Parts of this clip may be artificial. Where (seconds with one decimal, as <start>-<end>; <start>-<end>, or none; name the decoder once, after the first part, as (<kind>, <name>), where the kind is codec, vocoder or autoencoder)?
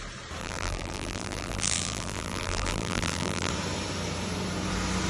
0.4-3.5 (vocoder, BigVGAN v2)